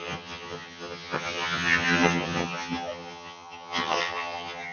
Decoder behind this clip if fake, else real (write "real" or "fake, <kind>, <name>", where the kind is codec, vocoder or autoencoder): fake, vocoder, HiFi-GAN